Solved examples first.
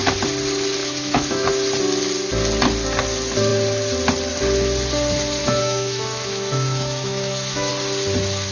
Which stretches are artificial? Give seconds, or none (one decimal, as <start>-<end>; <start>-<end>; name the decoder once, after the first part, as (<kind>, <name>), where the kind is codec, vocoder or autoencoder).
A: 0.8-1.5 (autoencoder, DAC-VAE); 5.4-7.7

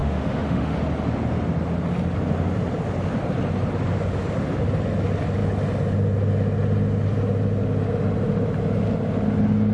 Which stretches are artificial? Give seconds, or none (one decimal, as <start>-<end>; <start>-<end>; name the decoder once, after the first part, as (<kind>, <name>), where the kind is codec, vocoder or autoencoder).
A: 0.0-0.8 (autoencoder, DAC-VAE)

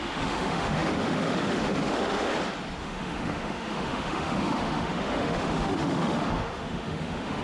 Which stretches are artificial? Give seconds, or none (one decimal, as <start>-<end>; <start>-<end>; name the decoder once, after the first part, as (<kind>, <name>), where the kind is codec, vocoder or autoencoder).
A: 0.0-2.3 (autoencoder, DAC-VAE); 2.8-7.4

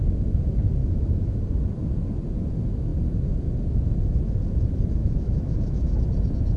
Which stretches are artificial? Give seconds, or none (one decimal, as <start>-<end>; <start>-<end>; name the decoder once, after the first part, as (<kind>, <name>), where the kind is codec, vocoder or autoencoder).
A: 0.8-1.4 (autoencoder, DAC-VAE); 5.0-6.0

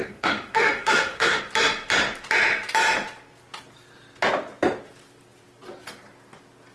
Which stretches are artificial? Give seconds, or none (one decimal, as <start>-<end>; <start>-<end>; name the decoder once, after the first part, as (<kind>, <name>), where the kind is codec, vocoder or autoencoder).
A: 0.0-1.4 (autoencoder, DAC-VAE)

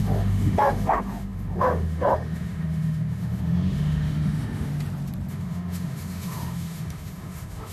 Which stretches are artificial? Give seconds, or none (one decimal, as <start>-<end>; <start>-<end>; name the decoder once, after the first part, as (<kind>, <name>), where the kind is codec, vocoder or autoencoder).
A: 0.0-4.7 (autoencoder, DAC-VAE); 5.3-7.7